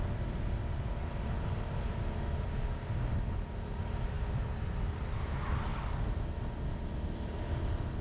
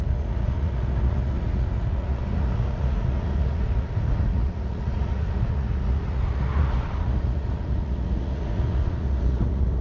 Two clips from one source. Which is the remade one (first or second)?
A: second